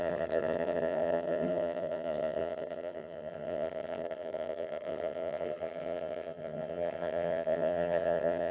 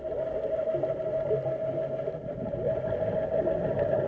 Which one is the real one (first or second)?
second